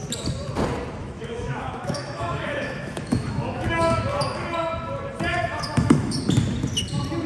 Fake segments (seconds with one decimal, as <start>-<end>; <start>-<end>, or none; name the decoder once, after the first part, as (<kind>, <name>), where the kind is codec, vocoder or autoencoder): 1.0-4.0 (autoencoder, DAC-VAE); 5.3-6.2